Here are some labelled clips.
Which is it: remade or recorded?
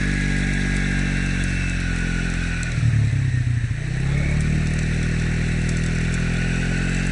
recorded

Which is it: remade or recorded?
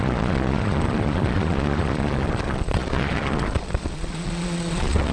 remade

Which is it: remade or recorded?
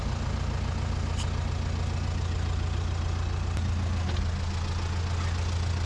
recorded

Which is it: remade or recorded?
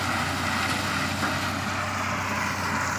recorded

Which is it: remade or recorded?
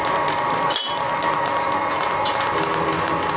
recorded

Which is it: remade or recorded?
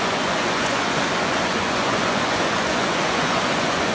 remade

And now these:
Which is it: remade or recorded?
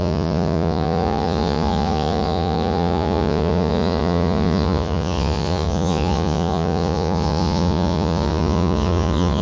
remade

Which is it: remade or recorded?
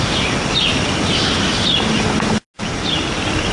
recorded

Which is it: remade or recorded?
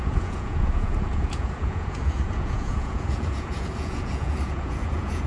remade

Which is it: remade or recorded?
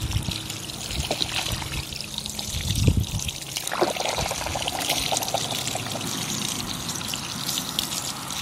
recorded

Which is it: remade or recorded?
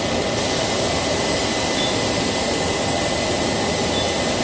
recorded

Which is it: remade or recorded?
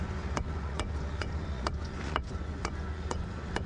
remade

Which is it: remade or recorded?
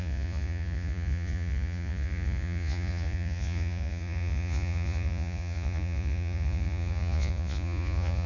remade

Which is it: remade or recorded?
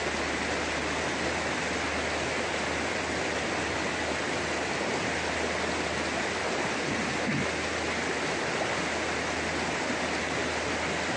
recorded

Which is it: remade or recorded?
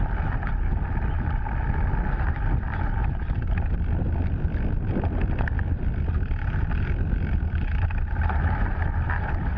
recorded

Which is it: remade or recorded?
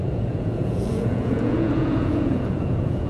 remade